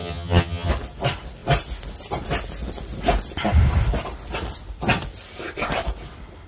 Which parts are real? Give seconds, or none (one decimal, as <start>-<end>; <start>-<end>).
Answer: 0.7-6.5